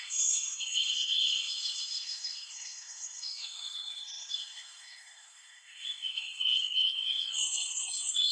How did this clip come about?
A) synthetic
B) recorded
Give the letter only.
A